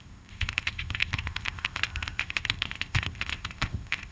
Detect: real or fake fake